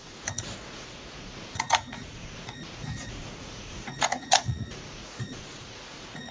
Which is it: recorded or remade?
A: remade